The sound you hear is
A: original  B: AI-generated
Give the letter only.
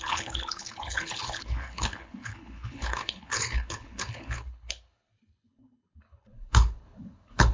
B